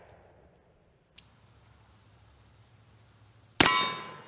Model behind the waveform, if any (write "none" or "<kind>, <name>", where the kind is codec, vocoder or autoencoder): none